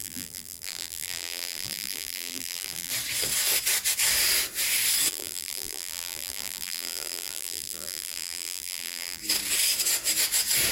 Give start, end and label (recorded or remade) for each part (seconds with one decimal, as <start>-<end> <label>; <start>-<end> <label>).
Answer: 0.0-2.9 remade; 2.9-5.1 recorded; 5.1-9.2 remade; 9.2-10.7 recorded